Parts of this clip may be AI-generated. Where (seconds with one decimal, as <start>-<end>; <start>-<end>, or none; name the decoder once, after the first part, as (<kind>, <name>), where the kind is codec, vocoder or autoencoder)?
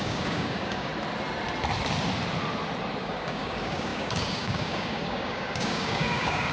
0.0-0.9 (codec, DAC); 3.0-6.5